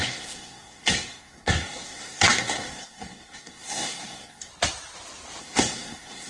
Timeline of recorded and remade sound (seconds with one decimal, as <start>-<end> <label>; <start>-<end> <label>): 0.0-4.5 remade; 4.5-5.4 recorded; 5.4-6.3 remade